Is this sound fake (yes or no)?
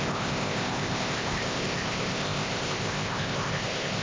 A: yes